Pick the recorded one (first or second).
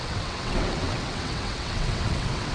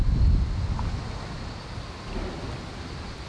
second